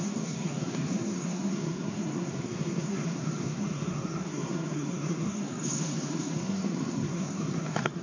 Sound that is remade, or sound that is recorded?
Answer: remade